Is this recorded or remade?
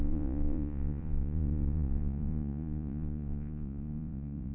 remade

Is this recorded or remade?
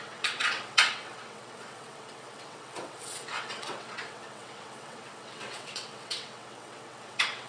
remade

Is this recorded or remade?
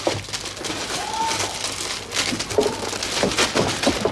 recorded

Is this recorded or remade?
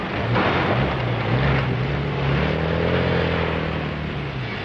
recorded